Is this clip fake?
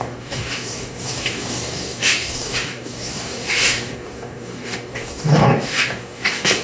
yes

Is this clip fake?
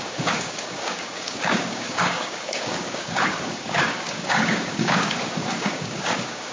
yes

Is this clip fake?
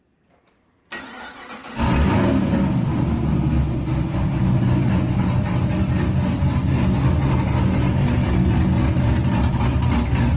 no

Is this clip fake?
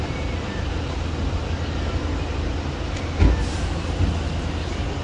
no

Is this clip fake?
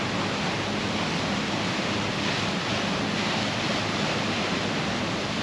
no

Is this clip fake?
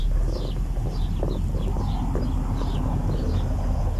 no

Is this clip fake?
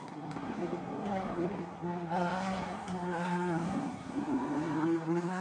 yes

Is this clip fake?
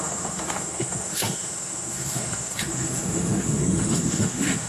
yes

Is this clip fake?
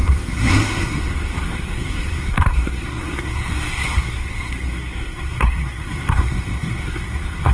yes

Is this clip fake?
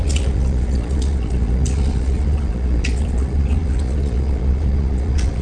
yes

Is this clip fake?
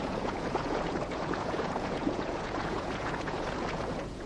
yes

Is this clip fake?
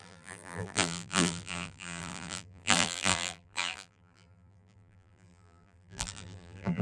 yes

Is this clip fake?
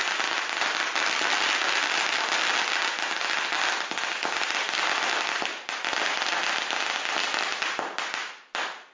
no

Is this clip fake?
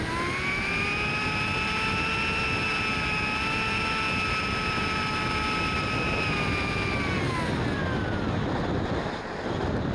no